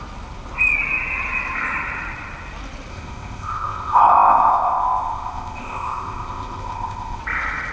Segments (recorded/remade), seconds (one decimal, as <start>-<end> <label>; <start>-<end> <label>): 0.0-2.9 recorded; 2.9-7.2 remade; 7.2-7.7 recorded